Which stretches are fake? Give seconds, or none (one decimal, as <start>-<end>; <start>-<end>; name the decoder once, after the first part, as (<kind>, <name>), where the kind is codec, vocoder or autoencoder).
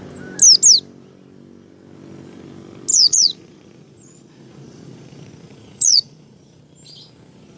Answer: 2.9-6.6 (vocoder, Vocos)